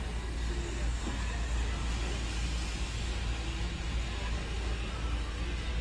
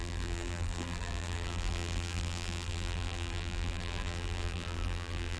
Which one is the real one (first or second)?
first